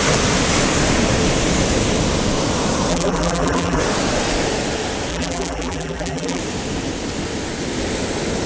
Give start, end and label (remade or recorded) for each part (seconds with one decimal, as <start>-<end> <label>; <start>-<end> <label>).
0.0-2.9 recorded; 2.9-3.8 remade; 3.8-5.1 recorded; 5.1-6.4 remade; 6.4-8.5 recorded